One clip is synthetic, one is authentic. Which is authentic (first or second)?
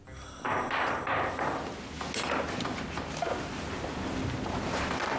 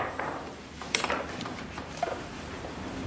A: first